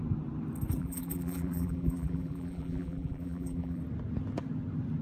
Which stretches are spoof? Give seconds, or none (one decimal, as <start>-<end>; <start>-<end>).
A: 0.8-3.8